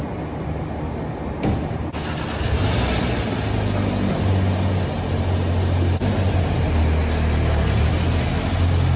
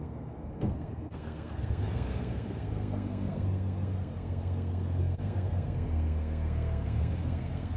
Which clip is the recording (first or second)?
first